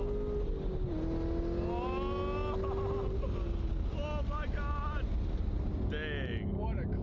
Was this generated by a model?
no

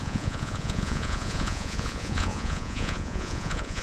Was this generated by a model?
yes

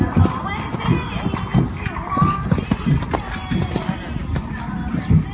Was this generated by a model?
no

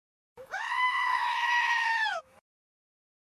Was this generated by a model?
yes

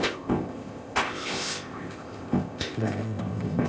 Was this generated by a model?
yes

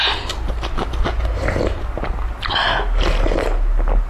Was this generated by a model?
no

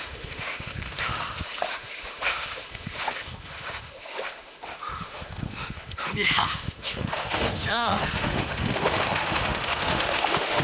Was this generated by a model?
yes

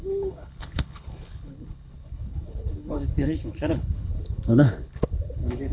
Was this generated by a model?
yes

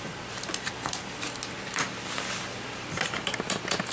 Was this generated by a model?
no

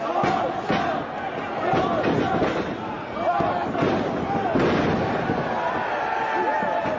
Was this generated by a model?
no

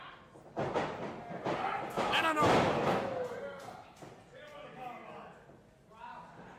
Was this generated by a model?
no